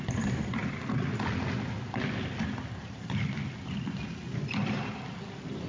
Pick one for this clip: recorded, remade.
recorded